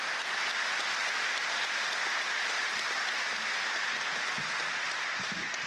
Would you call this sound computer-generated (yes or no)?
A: no